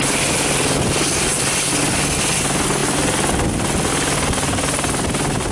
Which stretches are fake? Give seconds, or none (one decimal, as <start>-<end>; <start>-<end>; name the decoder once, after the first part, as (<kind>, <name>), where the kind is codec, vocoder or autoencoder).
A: none